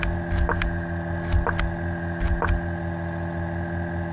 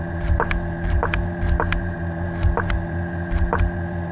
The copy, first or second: second